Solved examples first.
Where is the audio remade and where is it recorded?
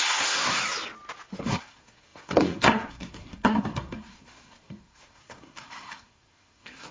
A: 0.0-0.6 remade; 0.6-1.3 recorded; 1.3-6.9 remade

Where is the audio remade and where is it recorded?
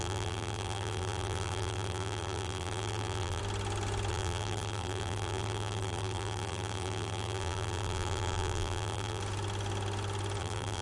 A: 0.0-3.4 remade; 3.4-4.1 recorded; 4.1-9.2 remade; 9.2-10.4 recorded; 10.4-10.8 remade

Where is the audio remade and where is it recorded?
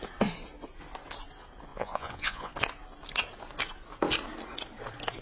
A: 0.0-1.7 recorded; 1.7-2.5 remade; 2.5-5.2 recorded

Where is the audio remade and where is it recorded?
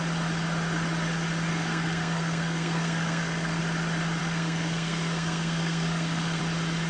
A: 0.0-1.5 recorded; 1.5-3.6 remade; 3.6-4.2 recorded; 4.2-6.4 remade; 6.4-6.9 recorded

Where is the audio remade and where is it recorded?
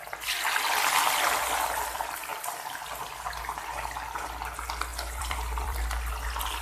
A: 0.0-2.3 recorded; 2.3-2.8 remade; 2.8-4.9 recorded; 4.9-6.1 remade; 6.1-6.6 recorded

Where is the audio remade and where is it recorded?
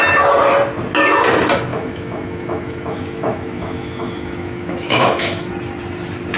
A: 0.0-1.7 recorded; 1.7-5.5 remade; 5.5-6.4 recorded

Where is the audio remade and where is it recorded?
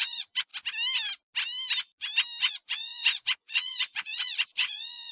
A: 0.0-0.5 remade; 0.5-2.4 recorded; 2.4-5.1 remade